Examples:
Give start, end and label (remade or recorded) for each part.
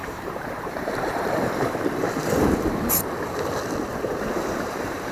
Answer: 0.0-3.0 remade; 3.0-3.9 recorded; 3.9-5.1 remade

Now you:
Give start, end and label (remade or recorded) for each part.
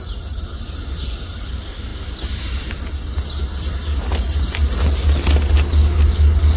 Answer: 0.0-6.6 recorded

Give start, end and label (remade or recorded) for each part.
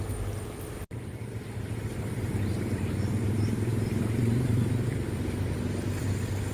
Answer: 0.0-6.5 remade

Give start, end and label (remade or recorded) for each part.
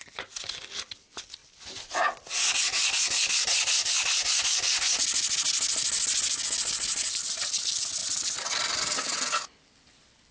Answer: 0.0-6.9 recorded; 6.9-7.6 remade; 7.6-8.0 recorded; 8.0-9.6 remade; 9.6-10.3 recorded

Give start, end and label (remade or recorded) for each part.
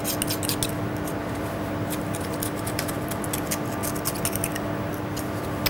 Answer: 0.0-1.2 recorded; 1.2-3.1 remade; 3.1-5.7 recorded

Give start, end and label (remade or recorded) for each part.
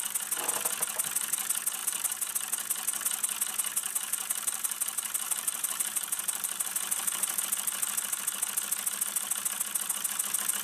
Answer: 0.0-1.8 recorded; 1.8-2.3 remade; 2.3-3.8 recorded; 3.8-7.4 remade; 7.4-10.6 recorded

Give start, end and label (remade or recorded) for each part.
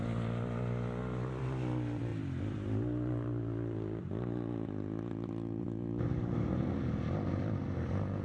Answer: 0.0-2.1 recorded; 2.1-5.6 remade; 5.6-8.2 recorded